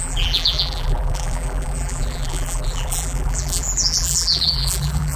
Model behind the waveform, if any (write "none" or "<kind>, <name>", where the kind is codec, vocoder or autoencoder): vocoder, BigVGAN v2